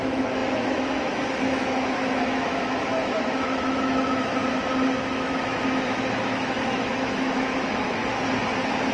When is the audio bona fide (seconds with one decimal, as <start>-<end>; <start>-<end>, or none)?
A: 4.4-5.1; 8.0-8.9